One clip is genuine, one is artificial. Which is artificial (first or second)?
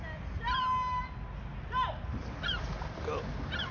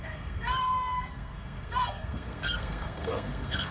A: second